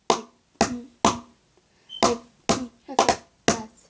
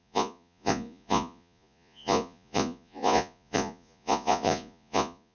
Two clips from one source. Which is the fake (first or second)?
second